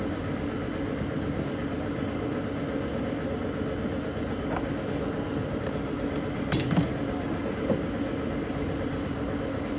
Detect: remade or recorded recorded